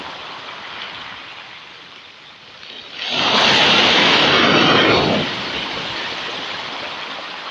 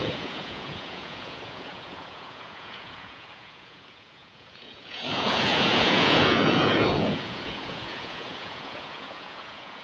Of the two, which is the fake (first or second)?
second